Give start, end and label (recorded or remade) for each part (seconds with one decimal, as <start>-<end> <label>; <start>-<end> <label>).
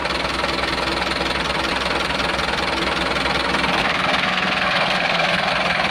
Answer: 0.0-3.8 recorded; 3.8-5.5 remade; 5.5-5.9 recorded